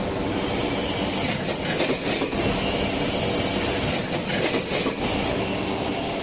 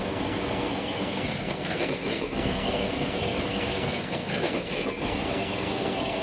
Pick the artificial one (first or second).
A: second